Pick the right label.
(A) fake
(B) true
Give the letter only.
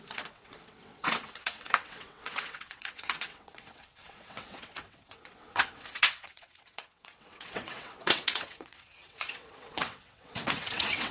A